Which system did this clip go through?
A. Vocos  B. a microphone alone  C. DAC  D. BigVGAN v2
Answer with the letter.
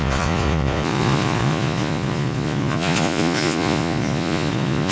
A